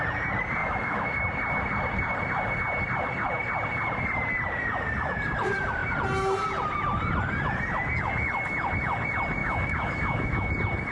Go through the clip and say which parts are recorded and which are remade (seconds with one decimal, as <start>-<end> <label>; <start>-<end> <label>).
0.0-0.6 recorded; 0.6-1.2 remade; 1.2-9.4 recorded; 9.4-10.5 remade; 10.5-10.9 recorded